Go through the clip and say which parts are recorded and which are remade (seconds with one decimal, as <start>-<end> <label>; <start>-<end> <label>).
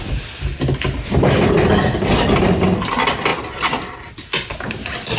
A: 0.0-5.2 recorded